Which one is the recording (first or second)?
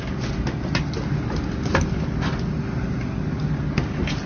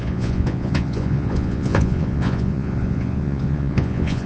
first